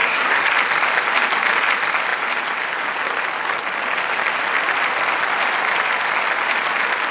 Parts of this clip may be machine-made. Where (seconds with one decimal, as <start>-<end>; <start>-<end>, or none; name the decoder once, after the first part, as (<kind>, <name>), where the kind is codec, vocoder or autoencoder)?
0.0-0.5 (codec, SNAC)